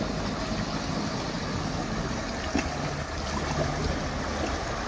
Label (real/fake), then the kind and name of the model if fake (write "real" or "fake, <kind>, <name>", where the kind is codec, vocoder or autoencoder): real